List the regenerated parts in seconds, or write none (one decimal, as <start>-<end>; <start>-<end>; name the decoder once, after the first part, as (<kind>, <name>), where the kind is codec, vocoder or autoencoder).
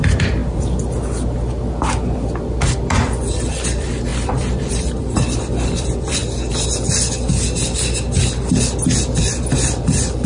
0.0-0.4 (vocoder, BigVGAN v2); 3.5-6.2; 9.1-10.3